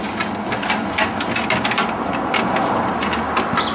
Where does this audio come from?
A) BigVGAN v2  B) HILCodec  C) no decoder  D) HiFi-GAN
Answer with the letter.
C